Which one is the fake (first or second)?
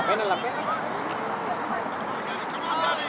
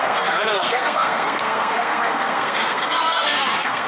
second